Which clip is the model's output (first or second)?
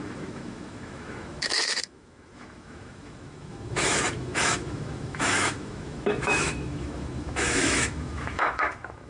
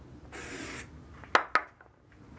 first